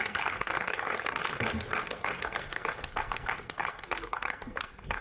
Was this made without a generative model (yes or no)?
no